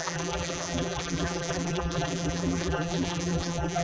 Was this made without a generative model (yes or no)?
no